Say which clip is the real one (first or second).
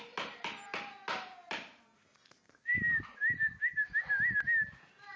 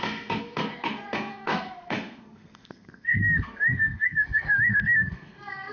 first